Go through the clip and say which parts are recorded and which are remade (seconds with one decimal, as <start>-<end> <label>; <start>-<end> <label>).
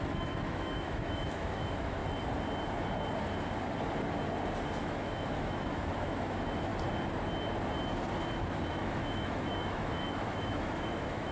0.0-2.0 remade; 2.0-4.8 recorded; 4.8-6.7 remade; 6.7-8.7 recorded; 8.7-11.3 remade